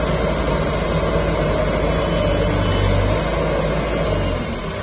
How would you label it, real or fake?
real